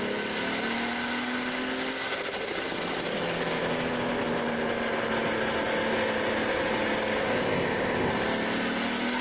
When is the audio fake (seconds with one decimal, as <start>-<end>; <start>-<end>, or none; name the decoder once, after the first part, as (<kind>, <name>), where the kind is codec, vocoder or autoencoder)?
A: 7.3-8.1 (codec, ZipCodec)